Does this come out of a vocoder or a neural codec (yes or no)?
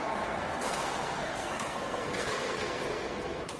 yes